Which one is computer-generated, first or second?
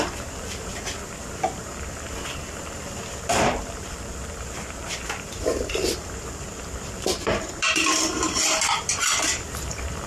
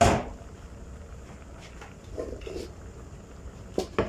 first